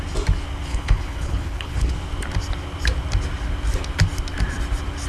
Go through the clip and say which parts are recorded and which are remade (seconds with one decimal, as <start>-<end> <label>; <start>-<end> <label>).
0.0-0.7 recorded; 0.7-1.9 remade; 1.9-5.1 recorded